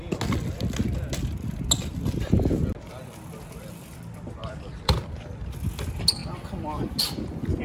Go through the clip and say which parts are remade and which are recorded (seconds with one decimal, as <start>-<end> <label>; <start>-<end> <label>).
0.0-4.4 recorded; 4.4-5.1 remade; 5.1-7.6 recorded